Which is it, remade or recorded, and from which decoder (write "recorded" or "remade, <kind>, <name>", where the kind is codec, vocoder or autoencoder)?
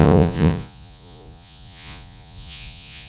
remade, vocoder, Vocos